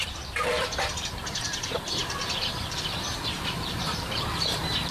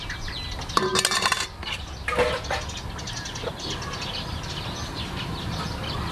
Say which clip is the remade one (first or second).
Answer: first